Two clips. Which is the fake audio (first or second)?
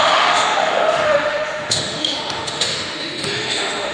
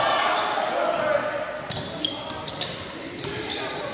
first